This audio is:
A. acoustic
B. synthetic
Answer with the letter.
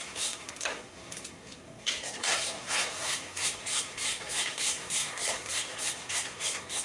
B